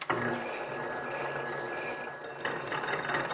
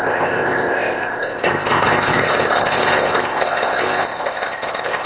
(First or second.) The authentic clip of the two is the first